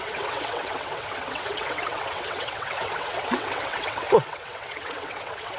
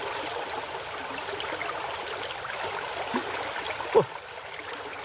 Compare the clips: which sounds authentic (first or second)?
second